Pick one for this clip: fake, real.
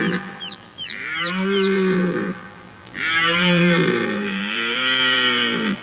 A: fake